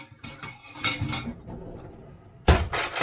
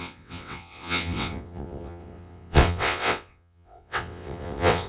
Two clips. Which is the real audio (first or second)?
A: first